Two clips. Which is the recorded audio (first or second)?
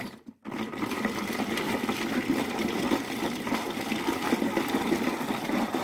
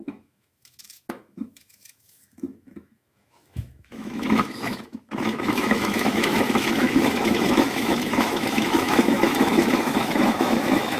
first